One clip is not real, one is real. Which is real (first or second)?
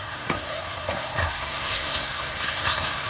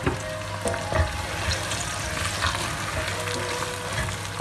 second